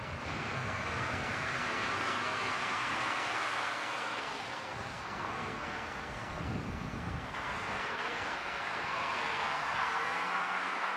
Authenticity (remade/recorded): remade